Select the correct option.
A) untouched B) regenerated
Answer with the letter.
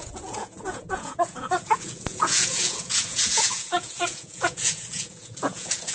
B